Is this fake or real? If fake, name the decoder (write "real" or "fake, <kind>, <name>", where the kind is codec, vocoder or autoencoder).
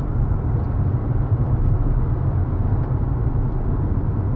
real